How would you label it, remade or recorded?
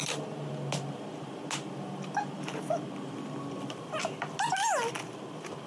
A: recorded